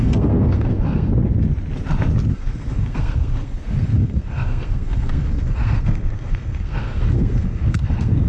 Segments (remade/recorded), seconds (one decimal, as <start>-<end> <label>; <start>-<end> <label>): 0.0-1.1 remade; 1.1-2.3 recorded; 2.3-8.3 remade